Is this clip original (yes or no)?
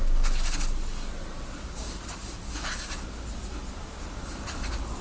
yes